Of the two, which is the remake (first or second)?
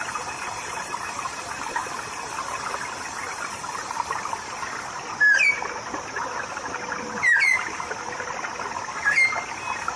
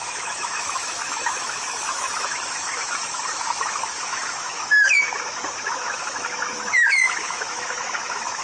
second